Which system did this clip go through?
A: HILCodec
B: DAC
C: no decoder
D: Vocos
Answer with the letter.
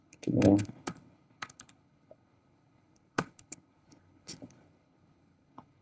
A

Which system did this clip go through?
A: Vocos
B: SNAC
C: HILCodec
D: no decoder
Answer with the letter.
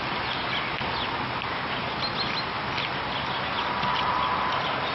D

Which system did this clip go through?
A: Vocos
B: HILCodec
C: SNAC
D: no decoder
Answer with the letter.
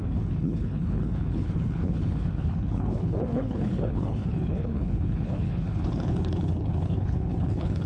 B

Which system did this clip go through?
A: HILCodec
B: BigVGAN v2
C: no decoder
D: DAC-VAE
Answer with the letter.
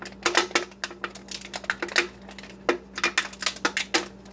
C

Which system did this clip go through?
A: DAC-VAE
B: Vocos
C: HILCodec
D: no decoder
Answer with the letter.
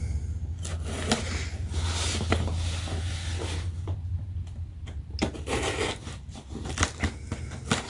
D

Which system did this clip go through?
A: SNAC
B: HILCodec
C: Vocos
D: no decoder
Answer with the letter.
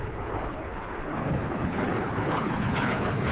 B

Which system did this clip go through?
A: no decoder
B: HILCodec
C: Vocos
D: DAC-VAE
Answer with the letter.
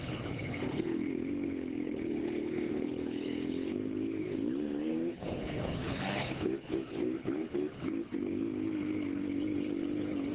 B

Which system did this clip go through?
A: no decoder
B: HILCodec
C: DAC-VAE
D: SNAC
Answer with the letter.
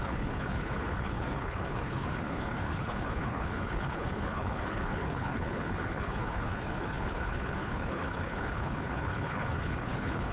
B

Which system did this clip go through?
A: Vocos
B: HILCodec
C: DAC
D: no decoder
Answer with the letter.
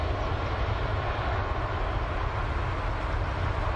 D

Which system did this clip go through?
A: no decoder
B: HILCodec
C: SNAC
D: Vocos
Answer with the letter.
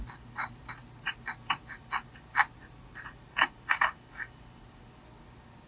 A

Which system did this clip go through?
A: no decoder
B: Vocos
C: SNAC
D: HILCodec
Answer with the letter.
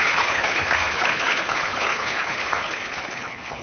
D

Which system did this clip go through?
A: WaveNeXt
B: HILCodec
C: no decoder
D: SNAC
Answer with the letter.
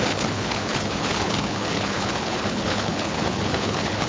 B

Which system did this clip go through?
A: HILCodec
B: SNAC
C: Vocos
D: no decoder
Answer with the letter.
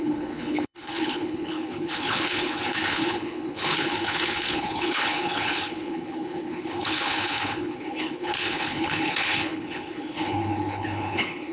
A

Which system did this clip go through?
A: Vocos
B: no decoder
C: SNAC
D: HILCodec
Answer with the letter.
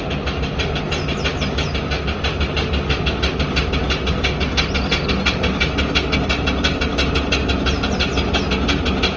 B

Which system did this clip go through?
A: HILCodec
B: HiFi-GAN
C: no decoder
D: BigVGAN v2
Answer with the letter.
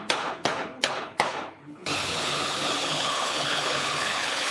A